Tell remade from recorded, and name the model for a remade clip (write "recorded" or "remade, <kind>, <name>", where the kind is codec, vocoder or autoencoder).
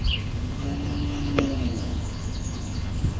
remade, codec, HILCodec